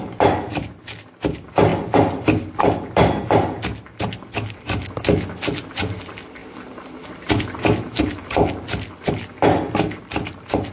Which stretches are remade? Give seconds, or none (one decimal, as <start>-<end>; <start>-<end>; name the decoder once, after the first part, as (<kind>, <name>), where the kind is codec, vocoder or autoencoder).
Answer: none